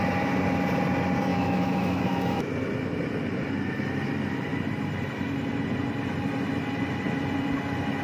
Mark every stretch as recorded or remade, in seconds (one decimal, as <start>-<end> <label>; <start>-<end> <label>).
0.0-1.3 recorded; 1.3-2.5 remade; 2.5-8.0 recorded